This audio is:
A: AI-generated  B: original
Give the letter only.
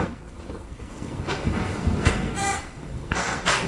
A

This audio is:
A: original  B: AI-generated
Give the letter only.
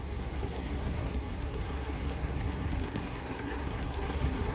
B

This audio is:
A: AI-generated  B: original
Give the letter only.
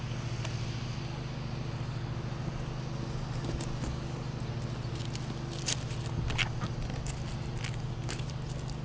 B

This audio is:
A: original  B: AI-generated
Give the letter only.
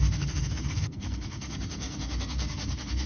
B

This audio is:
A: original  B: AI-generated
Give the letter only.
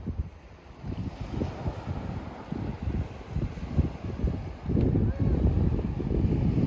A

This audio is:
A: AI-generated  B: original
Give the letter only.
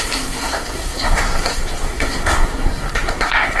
A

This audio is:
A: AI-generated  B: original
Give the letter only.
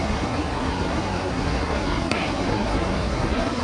A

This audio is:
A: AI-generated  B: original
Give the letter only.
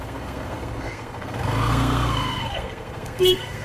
A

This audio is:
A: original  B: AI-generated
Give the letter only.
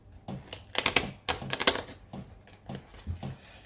A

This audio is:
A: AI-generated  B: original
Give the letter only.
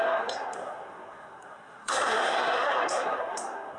A